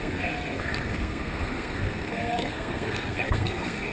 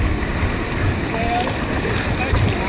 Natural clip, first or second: second